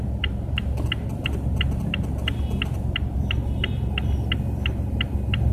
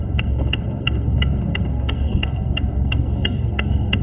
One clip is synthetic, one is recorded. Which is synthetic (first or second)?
second